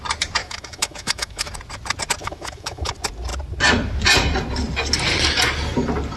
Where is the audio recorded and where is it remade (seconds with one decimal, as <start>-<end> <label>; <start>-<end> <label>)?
0.0-0.4 recorded; 0.4-1.5 remade; 1.5-2.2 recorded; 2.2-2.9 remade; 2.9-6.2 recorded